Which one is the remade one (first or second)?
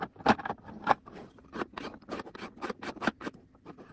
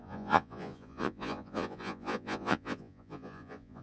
second